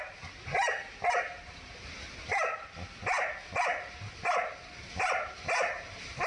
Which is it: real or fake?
real